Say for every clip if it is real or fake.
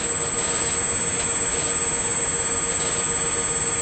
real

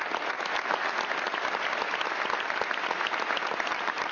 real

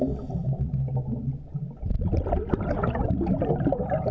real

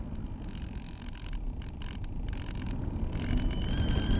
real